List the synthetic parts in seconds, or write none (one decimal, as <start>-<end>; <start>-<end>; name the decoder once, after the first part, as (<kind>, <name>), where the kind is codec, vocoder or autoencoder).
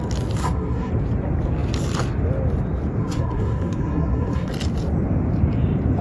0.4-0.9 (codec, SNAC); 3.0-4.5